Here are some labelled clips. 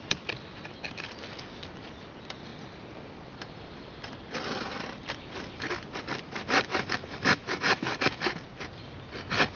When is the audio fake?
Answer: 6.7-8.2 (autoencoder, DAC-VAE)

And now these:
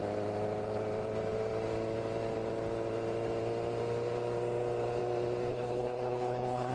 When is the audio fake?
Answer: 5.5-6.7 (codec, HILCodec)

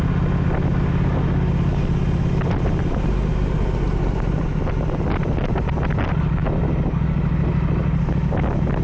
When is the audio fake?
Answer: none

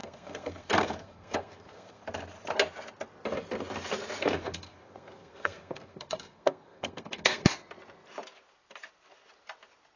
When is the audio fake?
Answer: 0.0-2.0 (codec, SNAC); 4.2-7.5

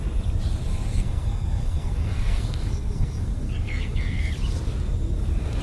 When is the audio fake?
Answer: 0.9-4.3 (codec, SNAC)

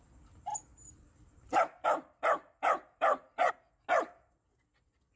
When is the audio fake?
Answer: 0.5-3.5 (vocoder, BigVGAN v2)

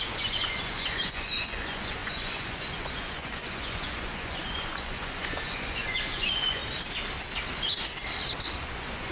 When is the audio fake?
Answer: 0.0-6.6 (vocoder, Vocos); 8.6-9.1